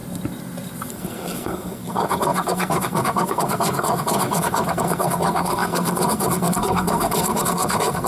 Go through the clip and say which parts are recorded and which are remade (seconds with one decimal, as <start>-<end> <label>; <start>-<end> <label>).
0.0-0.9 recorded; 0.9-8.1 remade